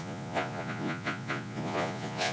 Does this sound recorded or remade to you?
remade